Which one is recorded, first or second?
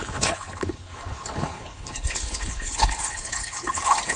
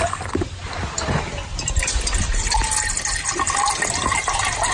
second